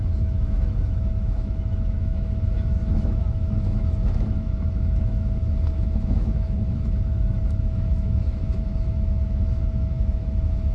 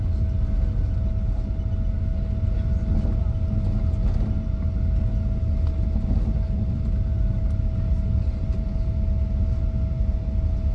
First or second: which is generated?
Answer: first